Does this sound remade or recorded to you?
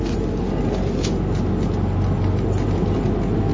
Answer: recorded